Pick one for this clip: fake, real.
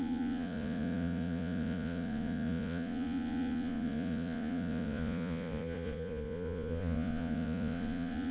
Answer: fake